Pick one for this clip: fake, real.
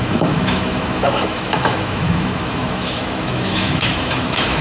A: fake